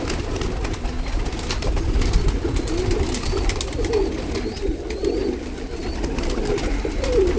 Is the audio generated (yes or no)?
no